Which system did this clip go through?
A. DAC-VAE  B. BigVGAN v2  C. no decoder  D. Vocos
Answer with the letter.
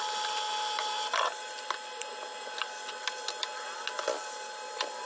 C